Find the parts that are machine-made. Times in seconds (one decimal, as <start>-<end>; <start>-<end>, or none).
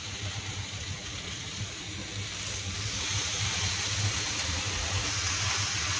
0.0-2.0; 3.0-6.0